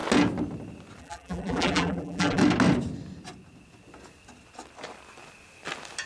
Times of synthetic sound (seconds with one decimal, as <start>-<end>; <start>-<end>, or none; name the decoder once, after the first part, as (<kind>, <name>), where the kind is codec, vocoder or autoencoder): 1.0-2.4 (vocoder, BigVGAN v2)